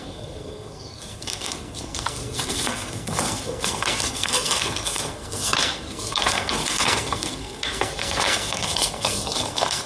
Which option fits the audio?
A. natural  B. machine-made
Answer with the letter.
B